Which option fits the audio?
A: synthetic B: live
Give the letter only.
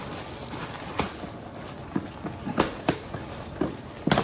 B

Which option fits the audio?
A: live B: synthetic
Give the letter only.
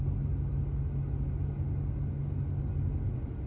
A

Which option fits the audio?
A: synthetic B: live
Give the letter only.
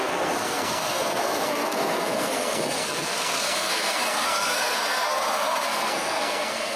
A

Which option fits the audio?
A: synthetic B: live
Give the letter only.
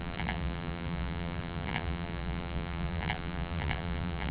A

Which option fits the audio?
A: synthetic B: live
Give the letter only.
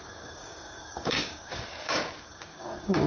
A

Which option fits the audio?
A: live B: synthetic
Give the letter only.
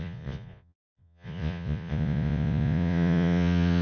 B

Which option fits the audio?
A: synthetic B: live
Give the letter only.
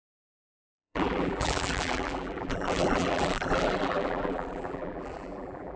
A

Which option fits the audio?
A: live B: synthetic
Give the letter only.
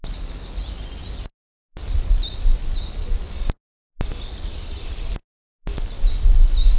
A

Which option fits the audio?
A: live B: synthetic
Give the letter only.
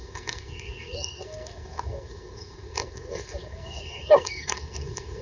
B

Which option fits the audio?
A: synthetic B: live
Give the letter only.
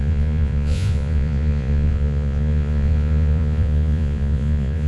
A